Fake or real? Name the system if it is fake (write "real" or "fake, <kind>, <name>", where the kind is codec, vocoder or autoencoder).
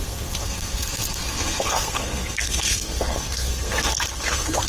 fake, codec, SNAC